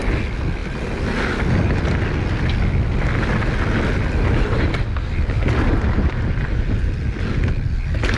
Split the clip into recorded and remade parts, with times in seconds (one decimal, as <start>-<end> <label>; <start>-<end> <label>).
0.0-8.2 recorded